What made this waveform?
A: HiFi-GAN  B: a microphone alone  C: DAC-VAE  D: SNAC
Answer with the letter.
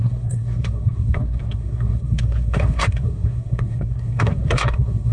D